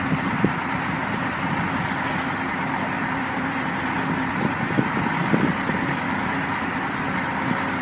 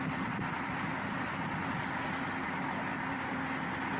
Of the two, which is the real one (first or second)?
second